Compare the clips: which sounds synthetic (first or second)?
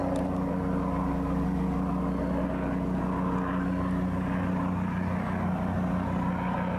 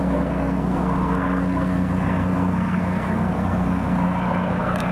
second